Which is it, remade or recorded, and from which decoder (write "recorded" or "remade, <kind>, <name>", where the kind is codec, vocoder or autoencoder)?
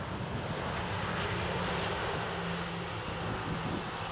recorded